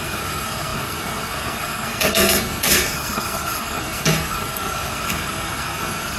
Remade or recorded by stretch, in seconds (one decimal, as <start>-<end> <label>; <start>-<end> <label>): 0.0-6.2 remade